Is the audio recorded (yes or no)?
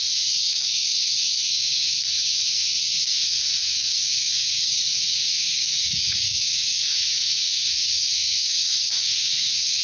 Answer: no